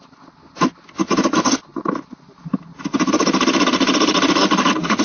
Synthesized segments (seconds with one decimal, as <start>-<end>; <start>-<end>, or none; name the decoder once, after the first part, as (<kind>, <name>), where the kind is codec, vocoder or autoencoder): none